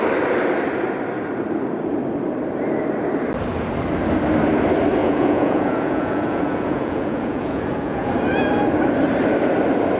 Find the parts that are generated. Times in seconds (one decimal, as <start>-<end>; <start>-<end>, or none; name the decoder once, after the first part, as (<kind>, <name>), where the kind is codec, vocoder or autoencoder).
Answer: 5.0-8.1 (vocoder, Vocos)